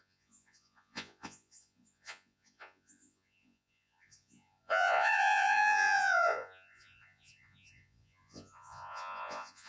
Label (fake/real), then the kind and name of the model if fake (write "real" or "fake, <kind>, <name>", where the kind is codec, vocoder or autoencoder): fake, vocoder, Vocos